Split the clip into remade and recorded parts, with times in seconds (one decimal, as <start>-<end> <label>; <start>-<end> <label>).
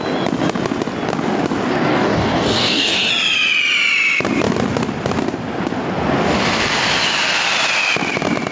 0.0-1.9 recorded; 1.9-3.1 remade; 3.1-8.5 recorded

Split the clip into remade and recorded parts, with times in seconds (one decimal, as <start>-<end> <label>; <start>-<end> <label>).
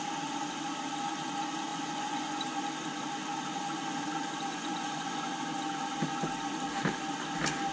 0.0-1.7 recorded; 1.7-2.4 remade; 2.4-4.5 recorded; 4.5-5.3 remade; 5.3-7.7 recorded